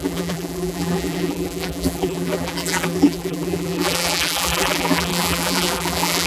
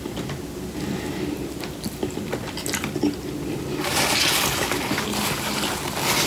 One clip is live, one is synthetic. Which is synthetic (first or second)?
first